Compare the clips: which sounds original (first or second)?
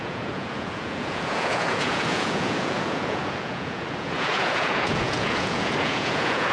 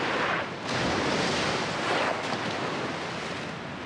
second